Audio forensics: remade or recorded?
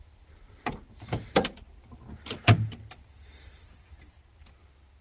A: recorded